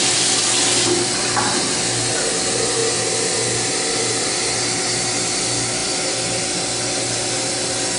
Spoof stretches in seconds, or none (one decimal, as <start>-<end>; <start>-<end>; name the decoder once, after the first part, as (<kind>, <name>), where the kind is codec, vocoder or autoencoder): none